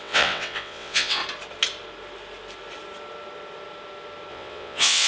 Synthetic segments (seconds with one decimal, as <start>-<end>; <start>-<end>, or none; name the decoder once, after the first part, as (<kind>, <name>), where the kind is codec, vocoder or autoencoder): 0.0-1.2 (vocoder, WaveNeXt); 4.3-5.1